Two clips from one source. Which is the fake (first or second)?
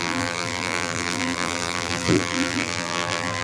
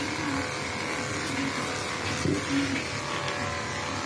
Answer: first